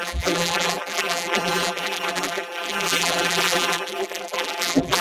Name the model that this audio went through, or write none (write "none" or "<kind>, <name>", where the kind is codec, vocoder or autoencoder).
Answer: vocoder, BigVGAN v2